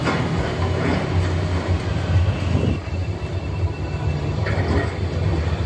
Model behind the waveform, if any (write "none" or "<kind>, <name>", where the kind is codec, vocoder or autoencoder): none